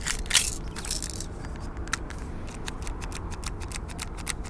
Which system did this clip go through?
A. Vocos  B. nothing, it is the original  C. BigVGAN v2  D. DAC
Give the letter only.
B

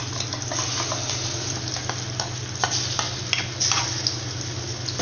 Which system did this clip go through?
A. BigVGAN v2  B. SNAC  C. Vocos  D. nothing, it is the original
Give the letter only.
D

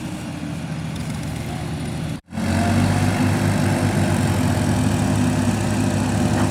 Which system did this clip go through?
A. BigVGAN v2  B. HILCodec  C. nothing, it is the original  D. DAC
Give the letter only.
C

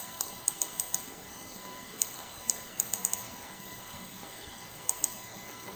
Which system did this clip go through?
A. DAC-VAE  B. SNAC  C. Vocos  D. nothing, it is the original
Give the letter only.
B